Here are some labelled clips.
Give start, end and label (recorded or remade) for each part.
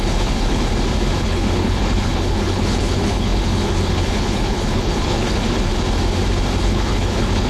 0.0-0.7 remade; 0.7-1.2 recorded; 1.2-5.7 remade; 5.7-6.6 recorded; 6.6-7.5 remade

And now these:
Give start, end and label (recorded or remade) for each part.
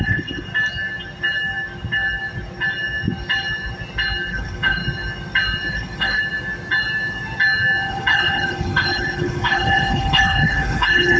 0.0-0.5 remade; 0.5-4.3 recorded; 4.3-4.8 remade; 4.8-5.7 recorded; 5.7-6.2 remade; 6.2-7.9 recorded; 7.9-11.2 remade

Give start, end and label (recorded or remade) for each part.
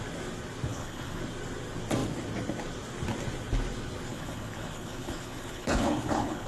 0.0-0.7 recorded; 0.7-1.2 remade; 1.2-4.1 recorded; 4.1-6.5 remade